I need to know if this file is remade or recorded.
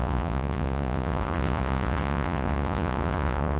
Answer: remade